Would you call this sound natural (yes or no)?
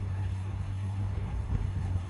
no